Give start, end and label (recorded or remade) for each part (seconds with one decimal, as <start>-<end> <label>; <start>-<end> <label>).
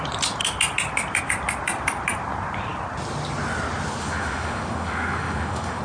0.0-4.0 recorded; 4.0-5.8 remade